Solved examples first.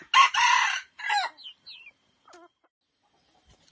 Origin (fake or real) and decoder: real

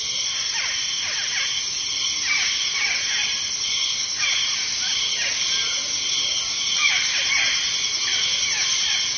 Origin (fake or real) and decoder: real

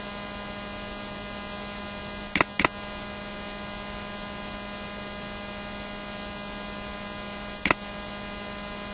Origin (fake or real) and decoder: real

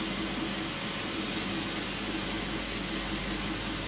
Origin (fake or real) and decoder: real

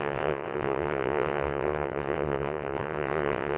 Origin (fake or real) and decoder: fake, vocoder, WaveNeXt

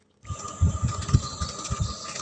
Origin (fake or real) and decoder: real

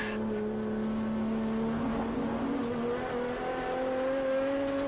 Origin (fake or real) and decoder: real